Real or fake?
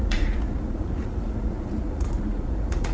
fake